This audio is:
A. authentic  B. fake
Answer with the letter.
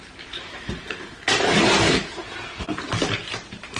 A